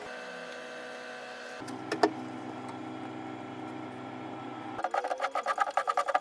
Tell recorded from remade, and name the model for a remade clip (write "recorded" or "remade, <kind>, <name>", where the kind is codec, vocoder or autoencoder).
recorded